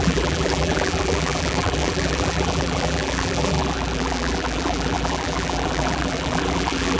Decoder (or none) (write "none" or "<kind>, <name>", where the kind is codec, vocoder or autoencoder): vocoder, BigVGAN v2